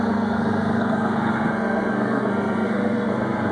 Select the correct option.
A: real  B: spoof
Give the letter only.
B